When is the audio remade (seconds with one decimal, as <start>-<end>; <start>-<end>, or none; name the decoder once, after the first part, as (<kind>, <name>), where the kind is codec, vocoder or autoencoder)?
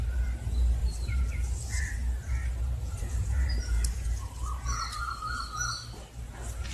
0.8-1.8 (vocoder, BigVGAN v2); 3.0-5.6